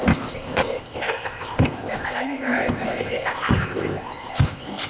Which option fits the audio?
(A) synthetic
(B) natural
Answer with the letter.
A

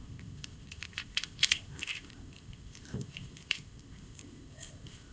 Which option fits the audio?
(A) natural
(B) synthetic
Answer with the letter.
B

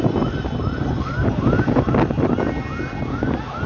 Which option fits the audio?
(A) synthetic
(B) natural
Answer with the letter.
B